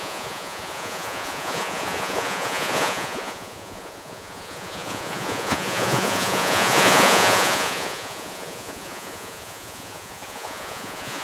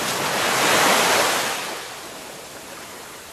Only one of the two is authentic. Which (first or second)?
second